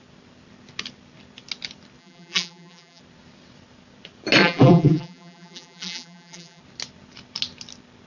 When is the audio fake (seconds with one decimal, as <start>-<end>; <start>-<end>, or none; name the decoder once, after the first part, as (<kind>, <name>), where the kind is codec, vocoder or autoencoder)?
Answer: 2.0-3.0 (vocoder, BigVGAN v2); 4.4-6.6